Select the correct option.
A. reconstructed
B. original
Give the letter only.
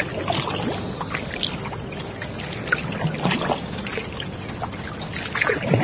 B